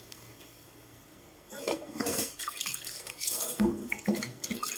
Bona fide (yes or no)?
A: no